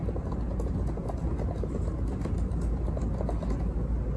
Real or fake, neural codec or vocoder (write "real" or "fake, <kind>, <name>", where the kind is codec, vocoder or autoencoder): real